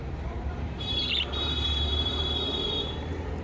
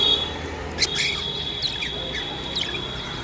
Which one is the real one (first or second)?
second